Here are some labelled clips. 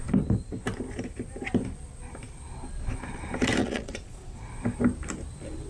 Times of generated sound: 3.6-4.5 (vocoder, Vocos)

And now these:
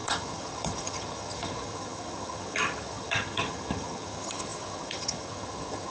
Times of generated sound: 0.0-5.9 (vocoder, HiFi-GAN)

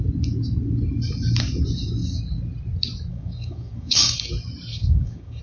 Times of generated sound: 3.1-4.3 (codec, DAC); 4.7-5.4

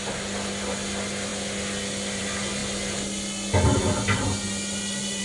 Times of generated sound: none

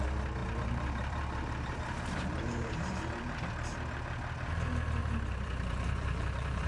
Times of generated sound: 0.4-3.5 (vocoder, BigVGAN v2); 5.0-6.7

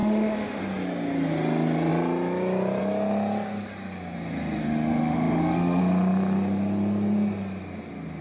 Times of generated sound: 0.0-0.6 (autoencoder, DAC-VAE); 4.6-5.8

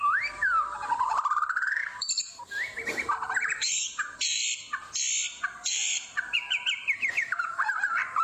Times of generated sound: 0.0-4.4 (vocoder, BigVGAN v2); 5.4-8.2